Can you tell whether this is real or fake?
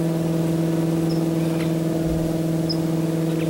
real